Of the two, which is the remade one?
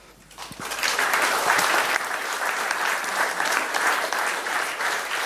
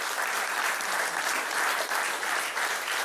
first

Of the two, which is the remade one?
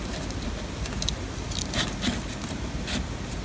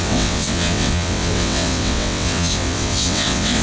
second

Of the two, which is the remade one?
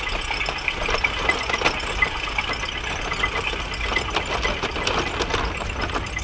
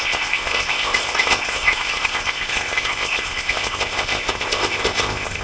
second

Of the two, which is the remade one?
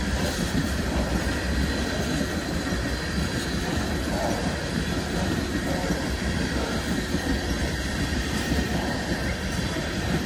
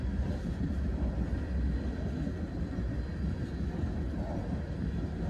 first